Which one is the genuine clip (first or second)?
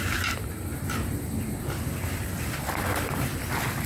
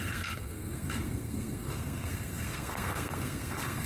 first